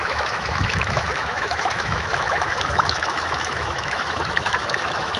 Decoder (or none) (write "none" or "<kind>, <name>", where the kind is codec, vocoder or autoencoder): autoencoder, DAC-VAE